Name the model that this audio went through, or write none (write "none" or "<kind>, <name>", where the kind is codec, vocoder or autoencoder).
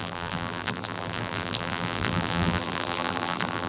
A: vocoder, BigVGAN v2